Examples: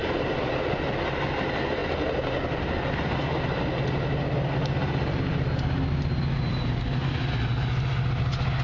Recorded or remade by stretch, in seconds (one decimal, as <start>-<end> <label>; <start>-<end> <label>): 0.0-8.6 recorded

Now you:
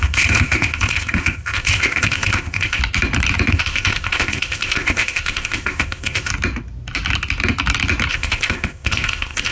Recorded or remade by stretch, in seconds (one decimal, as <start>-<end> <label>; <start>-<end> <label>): 0.0-2.8 remade; 2.8-3.5 recorded; 3.5-6.3 remade; 6.3-8.1 recorded; 8.1-9.5 remade

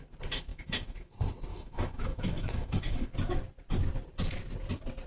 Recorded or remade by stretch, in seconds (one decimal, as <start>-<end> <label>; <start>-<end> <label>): 0.0-0.5 recorded; 0.5-1.1 remade; 1.1-1.5 recorded; 1.5-3.1 remade; 3.1-5.1 recorded

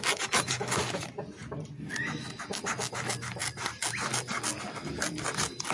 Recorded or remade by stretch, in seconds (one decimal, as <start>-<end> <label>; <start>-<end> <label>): 0.0-5.7 recorded